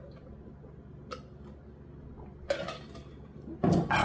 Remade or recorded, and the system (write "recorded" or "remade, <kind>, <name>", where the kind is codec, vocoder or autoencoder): recorded